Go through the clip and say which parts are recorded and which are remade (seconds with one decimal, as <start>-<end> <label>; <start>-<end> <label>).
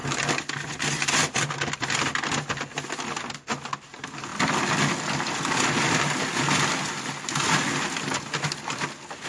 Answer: 0.0-9.3 recorded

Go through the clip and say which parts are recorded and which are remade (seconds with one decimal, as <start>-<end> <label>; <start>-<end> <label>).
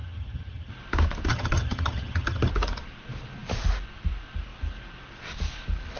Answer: 0.0-0.7 remade; 0.7-1.3 recorded; 1.3-2.5 remade; 2.5-6.0 recorded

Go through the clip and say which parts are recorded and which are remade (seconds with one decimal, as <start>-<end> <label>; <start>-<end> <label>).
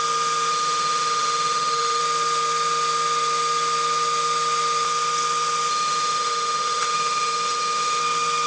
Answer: 0.0-0.5 recorded; 0.5-2.0 remade; 2.0-5.7 recorded; 5.7-8.0 remade; 8.0-8.5 recorded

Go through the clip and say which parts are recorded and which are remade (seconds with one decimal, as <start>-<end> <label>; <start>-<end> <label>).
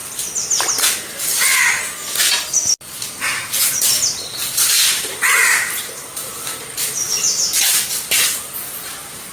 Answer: 0.0-4.5 recorded; 4.5-9.3 remade